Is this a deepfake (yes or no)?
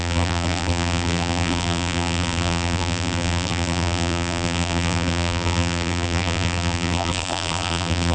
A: yes